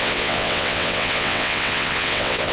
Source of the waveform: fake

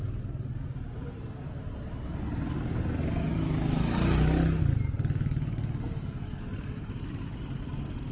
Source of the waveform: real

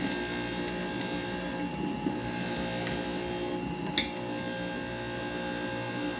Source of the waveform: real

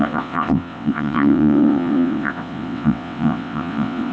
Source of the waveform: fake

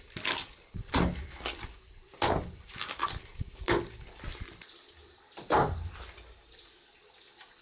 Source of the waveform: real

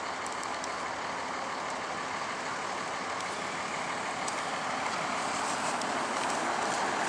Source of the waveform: real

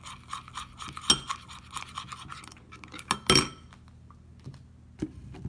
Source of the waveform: real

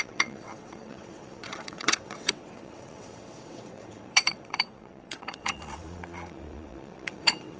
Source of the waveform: fake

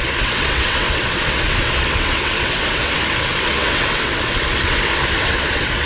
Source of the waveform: fake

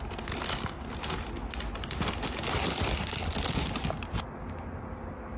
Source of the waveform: real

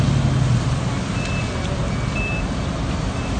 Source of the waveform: real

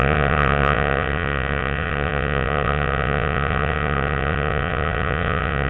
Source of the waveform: fake